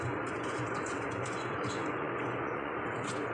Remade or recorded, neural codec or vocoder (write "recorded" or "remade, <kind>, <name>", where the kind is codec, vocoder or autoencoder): remade, vocoder, Vocos